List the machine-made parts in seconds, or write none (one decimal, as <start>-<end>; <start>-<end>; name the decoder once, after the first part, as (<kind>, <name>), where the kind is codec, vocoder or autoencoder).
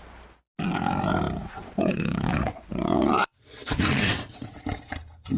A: 1.4-4.6 (vocoder, WaveNeXt)